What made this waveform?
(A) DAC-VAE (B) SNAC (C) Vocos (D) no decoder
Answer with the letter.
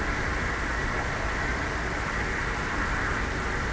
D